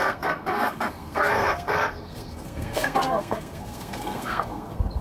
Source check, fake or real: fake